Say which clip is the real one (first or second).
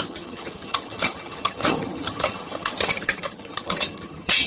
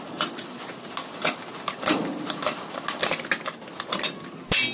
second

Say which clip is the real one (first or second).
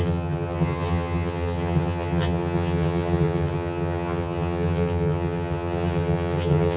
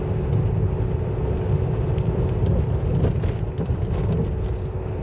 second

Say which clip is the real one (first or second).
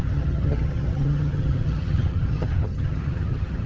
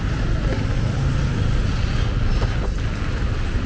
second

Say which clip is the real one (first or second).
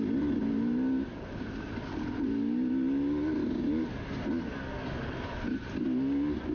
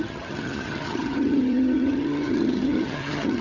first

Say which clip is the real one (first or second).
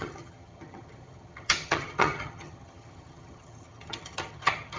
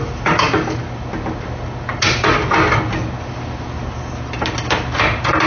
second